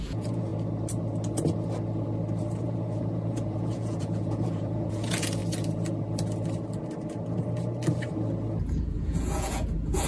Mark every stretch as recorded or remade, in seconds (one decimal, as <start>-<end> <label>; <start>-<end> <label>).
0.0-0.5 remade; 0.5-2.5 recorded; 2.5-5.4 remade; 5.4-8.6 recorded; 8.6-10.1 remade